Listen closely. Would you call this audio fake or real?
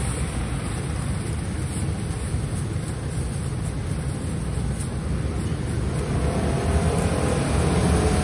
real